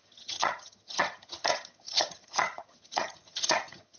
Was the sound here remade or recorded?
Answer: remade